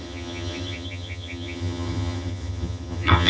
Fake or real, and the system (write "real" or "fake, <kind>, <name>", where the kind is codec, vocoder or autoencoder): fake, vocoder, HiFi-GAN